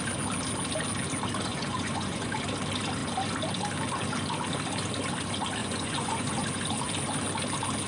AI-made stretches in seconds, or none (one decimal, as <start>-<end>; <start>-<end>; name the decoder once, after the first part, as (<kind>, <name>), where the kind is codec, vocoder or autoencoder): 1.5-2.3 (vocoder, Vocos); 5.6-6.3

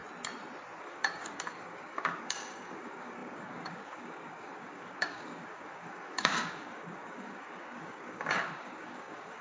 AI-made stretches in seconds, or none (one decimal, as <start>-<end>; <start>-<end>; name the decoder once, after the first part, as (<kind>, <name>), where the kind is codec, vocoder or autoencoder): 0.8-9.4 (codec, DAC)

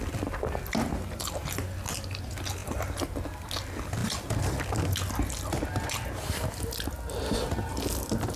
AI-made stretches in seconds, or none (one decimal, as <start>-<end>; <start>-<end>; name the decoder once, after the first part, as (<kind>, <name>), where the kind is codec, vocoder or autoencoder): none

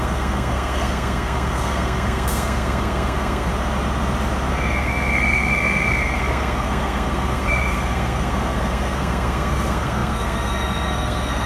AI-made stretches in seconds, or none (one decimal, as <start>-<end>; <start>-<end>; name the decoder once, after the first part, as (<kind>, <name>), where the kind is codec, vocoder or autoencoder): 0.0-3.5 (codec, SNAC); 4.5-11.5